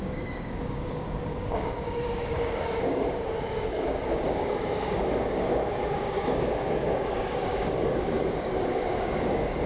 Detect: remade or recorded remade